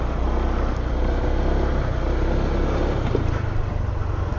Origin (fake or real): real